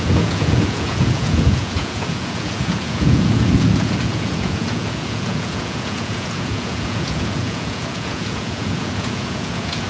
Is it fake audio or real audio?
fake